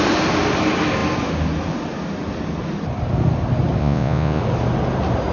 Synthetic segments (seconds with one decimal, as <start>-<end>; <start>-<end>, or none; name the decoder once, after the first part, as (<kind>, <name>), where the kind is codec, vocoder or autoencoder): 3.8-4.4 (vocoder, Vocos)